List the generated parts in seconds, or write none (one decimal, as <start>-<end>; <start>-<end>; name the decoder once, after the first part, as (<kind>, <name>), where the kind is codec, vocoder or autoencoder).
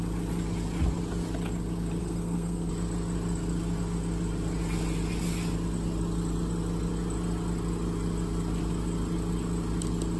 2.0-2.7 (codec, SNAC)